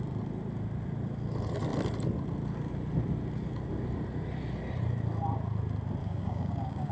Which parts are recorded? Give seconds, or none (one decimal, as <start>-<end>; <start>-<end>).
0.0-6.0